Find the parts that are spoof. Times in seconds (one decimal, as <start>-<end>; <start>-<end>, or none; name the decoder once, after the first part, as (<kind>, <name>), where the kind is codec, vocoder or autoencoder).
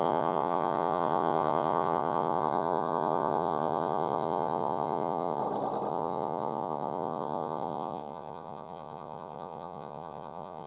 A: 0.0-5.4 (vocoder, Vocos); 5.9-10.7